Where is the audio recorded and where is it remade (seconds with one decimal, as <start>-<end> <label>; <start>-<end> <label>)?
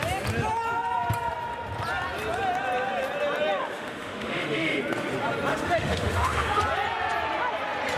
0.0-3.6 recorded; 3.6-4.8 remade; 4.8-5.5 recorded; 5.5-6.6 remade; 6.6-8.0 recorded